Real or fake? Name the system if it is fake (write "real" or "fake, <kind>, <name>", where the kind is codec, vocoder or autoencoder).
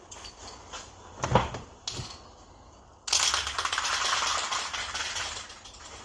real